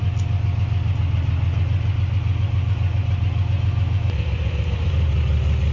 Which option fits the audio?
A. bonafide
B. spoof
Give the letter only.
A